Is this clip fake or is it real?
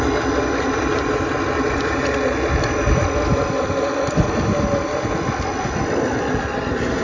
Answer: real